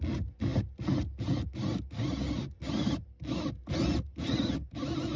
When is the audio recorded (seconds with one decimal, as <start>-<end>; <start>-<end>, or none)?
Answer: 0.0-5.2